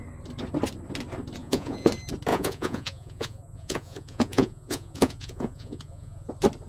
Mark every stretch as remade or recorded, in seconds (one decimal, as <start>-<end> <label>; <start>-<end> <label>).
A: 0.0-1.4 recorded; 1.4-1.9 remade; 1.9-2.3 recorded; 2.3-6.3 remade; 6.3-6.7 recorded